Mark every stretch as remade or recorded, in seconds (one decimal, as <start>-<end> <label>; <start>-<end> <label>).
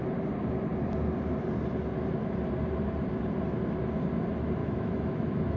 0.0-4.6 recorded; 4.6-5.6 remade